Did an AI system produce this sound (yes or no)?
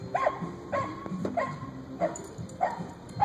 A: yes